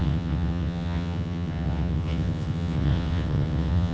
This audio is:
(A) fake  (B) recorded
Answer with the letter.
A